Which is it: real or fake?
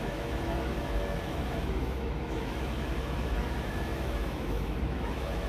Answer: fake